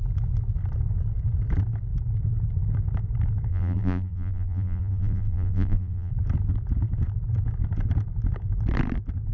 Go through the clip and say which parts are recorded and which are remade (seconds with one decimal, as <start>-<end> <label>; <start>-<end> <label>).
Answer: 0.0-3.5 recorded; 3.5-6.1 remade; 6.1-9.3 recorded